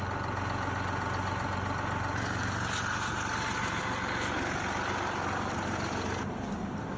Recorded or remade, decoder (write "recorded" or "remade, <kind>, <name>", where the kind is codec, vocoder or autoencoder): recorded